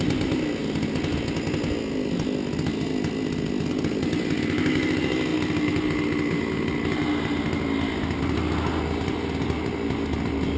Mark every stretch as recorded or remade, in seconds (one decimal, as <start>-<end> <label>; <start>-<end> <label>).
0.0-10.6 recorded